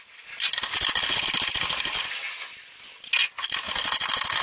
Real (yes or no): yes